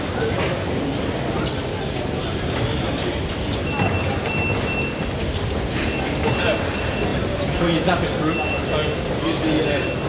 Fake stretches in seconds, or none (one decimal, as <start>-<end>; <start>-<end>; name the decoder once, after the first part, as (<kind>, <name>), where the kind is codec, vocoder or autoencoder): none